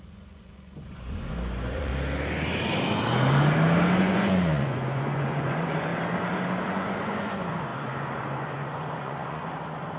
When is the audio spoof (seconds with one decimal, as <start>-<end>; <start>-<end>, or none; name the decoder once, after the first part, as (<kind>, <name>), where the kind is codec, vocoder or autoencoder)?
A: 0.0-1.9 (vocoder, Vocos); 4.0-5.9; 6.7-10.0